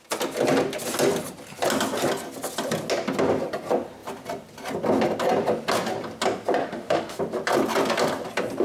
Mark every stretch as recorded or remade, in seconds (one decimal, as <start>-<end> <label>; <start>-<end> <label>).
0.0-6.6 recorded; 6.6-7.2 remade; 7.2-8.6 recorded